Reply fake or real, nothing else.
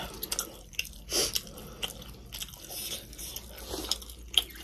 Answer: real